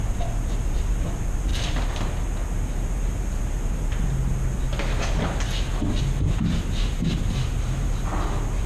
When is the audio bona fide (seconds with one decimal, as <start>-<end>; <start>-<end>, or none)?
0.0-8.7